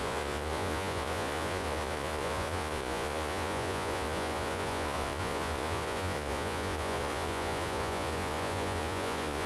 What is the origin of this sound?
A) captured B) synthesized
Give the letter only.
B